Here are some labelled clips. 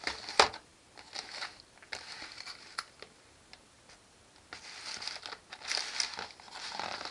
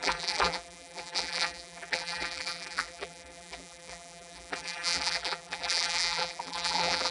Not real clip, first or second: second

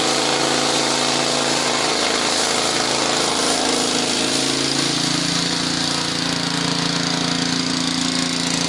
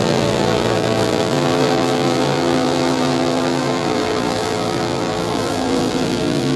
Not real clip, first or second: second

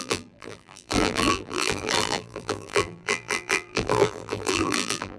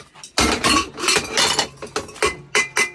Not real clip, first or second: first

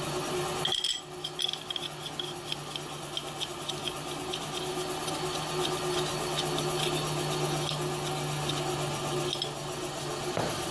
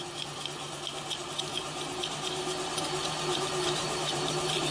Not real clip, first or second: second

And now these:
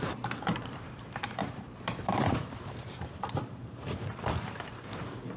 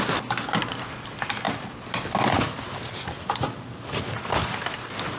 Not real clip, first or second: first